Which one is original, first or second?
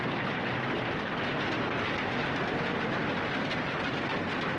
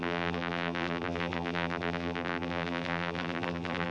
first